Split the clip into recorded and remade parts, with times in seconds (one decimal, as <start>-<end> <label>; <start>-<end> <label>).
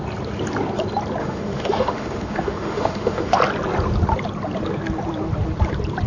0.0-1.2 recorded; 1.2-3.4 remade; 3.4-6.1 recorded